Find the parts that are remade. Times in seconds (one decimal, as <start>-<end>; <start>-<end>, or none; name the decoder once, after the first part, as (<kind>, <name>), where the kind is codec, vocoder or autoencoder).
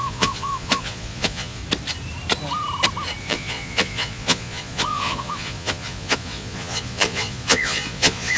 0.0-1.6 (vocoder, Vocos); 3.2-8.4